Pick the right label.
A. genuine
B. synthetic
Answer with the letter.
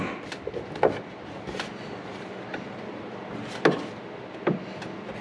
A